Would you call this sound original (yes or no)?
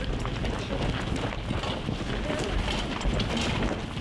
yes